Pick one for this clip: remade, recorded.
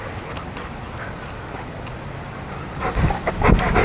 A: recorded